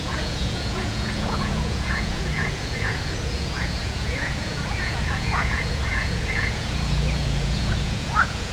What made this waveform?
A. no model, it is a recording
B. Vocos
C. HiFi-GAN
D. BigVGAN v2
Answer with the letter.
B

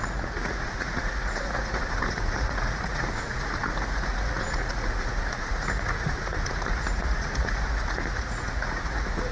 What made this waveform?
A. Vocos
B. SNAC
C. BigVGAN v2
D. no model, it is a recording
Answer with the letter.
A